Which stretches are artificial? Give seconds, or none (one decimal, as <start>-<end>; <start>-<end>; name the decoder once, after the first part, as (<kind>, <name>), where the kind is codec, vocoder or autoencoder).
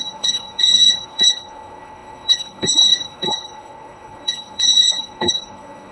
0.0-5.9 (codec, HILCodec)